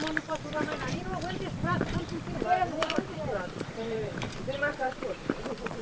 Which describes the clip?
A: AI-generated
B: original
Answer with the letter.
A